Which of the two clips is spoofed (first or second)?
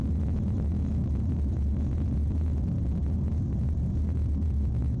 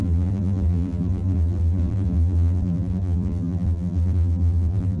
second